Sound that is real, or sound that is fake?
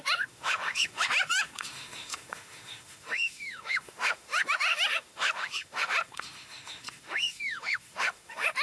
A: fake